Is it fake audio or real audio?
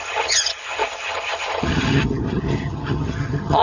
fake